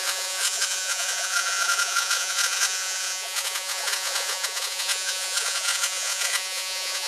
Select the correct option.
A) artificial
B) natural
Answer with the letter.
A